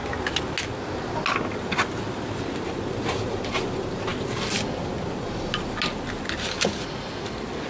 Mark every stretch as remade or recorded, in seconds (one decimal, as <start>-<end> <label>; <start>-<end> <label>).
0.0-7.7 recorded